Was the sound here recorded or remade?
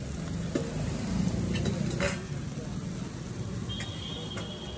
recorded